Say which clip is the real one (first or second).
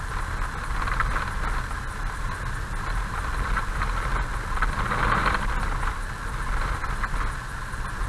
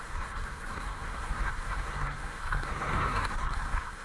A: first